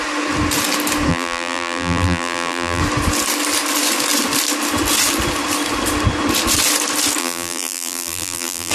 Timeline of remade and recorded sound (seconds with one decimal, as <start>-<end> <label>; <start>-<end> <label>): 0.0-1.1 recorded; 1.1-2.8 remade; 2.8-7.2 recorded; 7.2-8.7 remade